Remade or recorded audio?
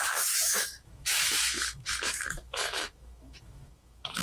remade